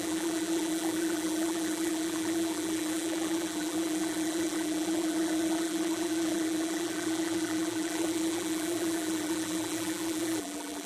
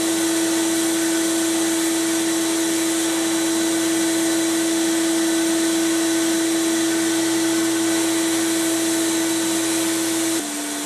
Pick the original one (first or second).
second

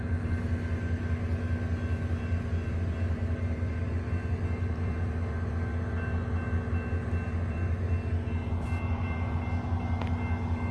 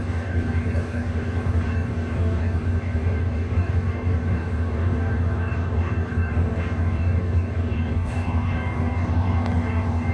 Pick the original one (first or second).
first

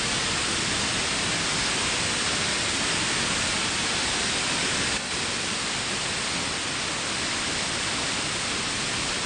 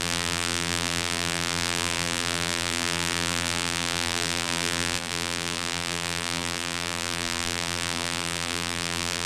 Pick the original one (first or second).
first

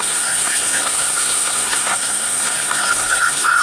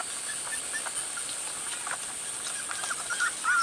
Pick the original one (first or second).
second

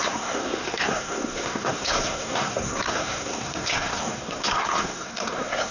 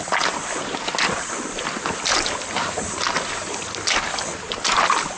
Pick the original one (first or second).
second